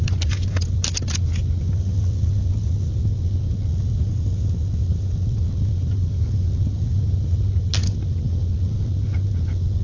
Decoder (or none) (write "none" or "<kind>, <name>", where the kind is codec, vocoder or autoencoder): none